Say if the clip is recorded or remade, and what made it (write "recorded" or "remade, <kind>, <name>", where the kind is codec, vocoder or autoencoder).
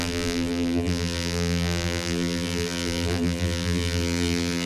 remade, vocoder, BigVGAN v2